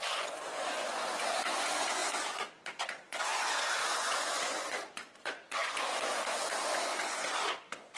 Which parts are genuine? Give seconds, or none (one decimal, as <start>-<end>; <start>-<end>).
none